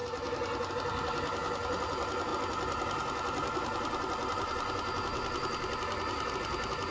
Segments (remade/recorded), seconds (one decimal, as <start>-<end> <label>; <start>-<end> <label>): 0.0-6.9 recorded